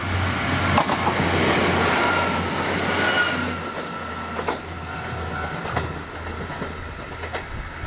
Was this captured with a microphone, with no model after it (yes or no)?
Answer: yes